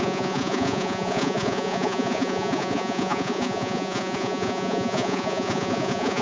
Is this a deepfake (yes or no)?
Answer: yes